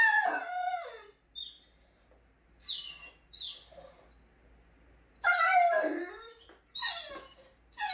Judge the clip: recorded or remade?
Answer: recorded